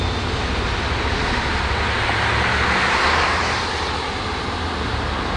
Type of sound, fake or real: real